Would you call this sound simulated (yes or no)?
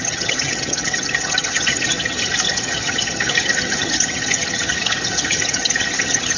yes